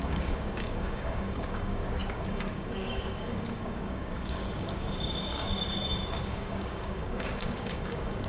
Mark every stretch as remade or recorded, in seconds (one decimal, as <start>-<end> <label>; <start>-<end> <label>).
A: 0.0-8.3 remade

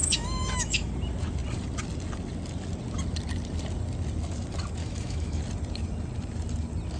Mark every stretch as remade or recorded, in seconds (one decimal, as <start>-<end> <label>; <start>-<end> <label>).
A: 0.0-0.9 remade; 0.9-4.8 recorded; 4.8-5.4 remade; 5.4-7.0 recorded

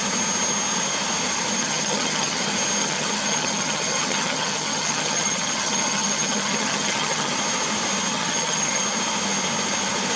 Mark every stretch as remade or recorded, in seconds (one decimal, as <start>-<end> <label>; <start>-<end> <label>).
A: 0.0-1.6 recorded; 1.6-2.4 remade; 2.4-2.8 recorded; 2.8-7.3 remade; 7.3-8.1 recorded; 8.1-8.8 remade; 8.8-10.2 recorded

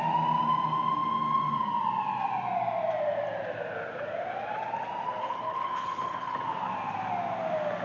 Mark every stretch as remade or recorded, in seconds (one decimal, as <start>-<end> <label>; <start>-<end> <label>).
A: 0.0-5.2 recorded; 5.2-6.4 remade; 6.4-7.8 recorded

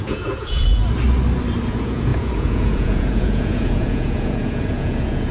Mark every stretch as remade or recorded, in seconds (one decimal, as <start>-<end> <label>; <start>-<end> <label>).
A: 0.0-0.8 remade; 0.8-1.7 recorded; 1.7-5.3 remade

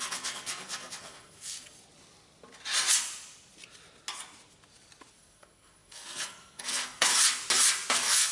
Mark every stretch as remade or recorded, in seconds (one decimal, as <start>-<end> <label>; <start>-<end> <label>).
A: 0.0-1.8 remade; 1.8-5.1 recorded; 5.1-7.1 remade; 7.1-7.9 recorded; 7.9-8.3 remade

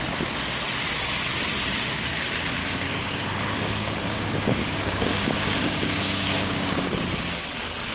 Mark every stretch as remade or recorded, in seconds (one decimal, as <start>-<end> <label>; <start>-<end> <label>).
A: 0.0-2.6 recorded; 2.6-6.9 remade; 6.9-7.9 recorded